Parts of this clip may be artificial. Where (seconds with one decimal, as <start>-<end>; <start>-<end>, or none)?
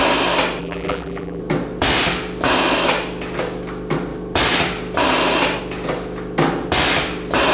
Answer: 0.6-1.4